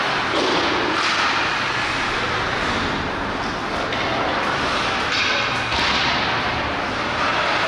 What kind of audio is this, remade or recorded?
recorded